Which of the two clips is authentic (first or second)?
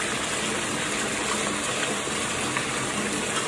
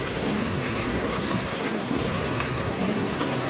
first